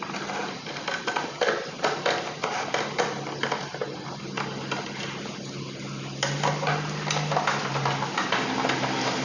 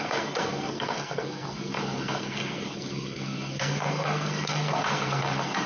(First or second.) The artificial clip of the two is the second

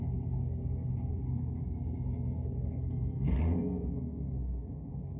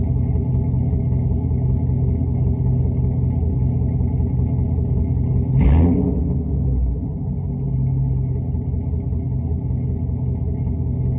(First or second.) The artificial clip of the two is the first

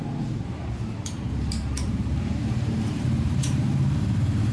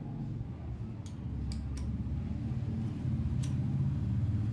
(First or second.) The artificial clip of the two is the first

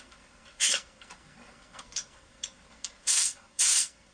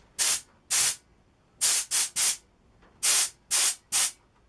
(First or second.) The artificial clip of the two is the first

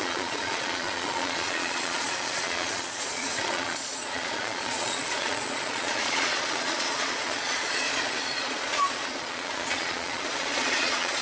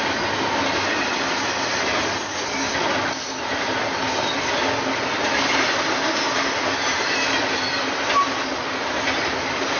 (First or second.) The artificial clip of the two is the first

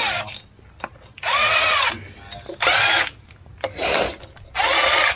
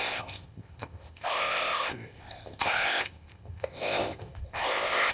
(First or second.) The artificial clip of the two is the second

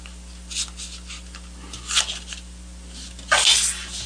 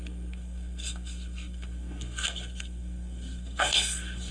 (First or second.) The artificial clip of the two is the second